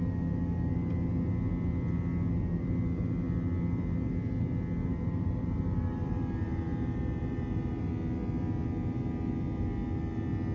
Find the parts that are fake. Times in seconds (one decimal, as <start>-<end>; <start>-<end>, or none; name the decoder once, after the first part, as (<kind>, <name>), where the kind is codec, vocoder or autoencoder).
4.9-7.9 (vocoder, BigVGAN v2)